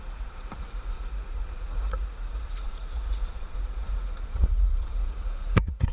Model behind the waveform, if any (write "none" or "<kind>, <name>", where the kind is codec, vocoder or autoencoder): vocoder, Vocos